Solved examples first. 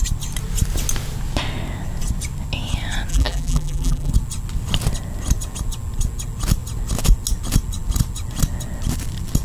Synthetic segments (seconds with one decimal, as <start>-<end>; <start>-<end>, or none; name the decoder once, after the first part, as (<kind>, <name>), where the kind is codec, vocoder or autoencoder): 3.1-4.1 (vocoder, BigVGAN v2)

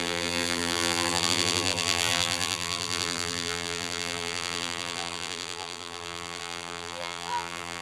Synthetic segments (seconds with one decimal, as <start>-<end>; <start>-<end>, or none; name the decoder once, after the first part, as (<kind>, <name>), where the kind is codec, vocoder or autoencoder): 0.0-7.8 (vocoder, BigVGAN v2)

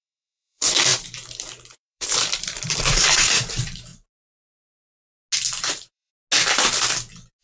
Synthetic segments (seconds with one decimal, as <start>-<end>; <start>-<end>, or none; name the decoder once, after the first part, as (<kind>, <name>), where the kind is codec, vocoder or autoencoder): 0.0-3.9 (vocoder, BigVGAN v2); 5.6-6.1

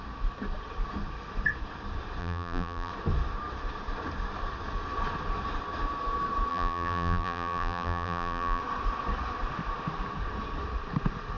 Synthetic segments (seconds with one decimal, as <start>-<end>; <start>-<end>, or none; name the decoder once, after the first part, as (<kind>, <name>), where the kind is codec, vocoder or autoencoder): 2.2-2.9 (vocoder, BigVGAN v2); 6.5-8.6

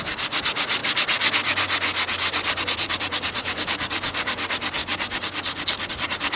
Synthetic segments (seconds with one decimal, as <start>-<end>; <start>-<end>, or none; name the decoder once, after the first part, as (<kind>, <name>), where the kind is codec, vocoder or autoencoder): 0.0-0.8 (vocoder, BigVGAN v2); 2.1-4.8; 5.9-6.4